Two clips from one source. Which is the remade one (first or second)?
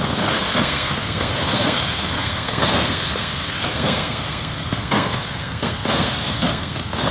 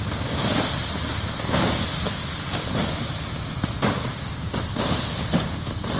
first